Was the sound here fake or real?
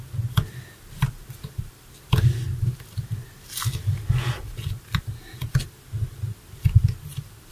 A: real